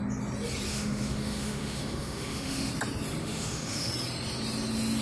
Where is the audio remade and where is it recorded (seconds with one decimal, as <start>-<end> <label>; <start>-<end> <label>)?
0.0-0.7 recorded; 0.7-2.7 remade; 2.7-3.2 recorded; 3.2-3.9 remade; 3.9-5.0 recorded